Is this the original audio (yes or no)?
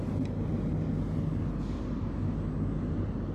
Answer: yes